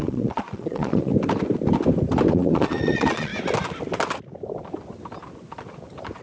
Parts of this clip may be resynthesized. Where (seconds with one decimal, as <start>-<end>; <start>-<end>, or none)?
0.0-1.1; 2.3-3.3